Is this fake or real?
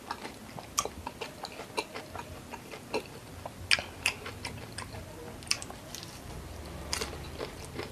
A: real